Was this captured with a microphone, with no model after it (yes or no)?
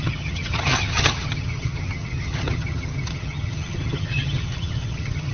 no